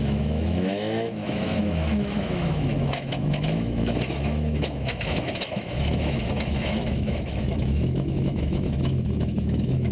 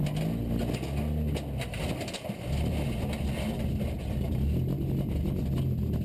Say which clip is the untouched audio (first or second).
second